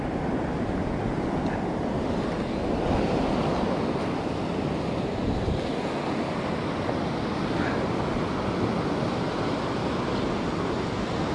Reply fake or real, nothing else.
real